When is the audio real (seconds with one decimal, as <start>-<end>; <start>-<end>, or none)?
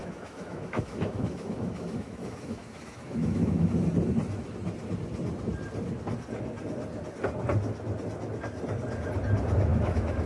3.7-9.7